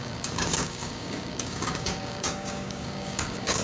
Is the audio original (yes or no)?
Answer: no